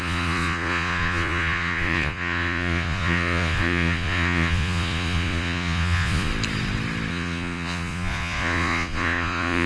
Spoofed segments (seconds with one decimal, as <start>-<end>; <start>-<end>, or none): 0.0-6.3; 7.1-9.7